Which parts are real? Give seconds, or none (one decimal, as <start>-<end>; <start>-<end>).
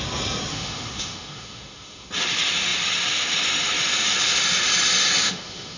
0.0-0.5; 2.1-5.2